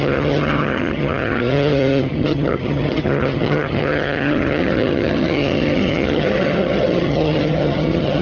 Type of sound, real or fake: fake